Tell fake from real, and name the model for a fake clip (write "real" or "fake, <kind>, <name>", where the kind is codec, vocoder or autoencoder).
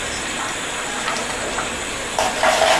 real